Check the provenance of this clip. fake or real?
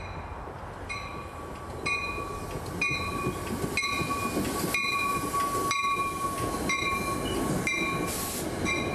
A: real